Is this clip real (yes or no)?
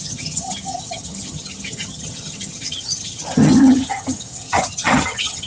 no